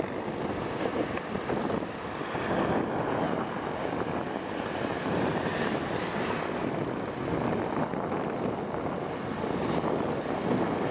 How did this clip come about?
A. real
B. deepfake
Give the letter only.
A